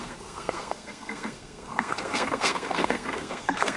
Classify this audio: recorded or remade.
remade